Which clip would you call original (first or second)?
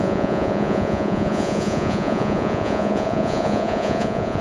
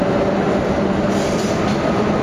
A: second